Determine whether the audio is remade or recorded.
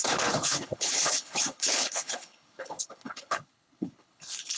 remade